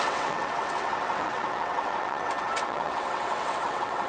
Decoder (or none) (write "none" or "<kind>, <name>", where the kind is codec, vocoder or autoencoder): vocoder, WaveNeXt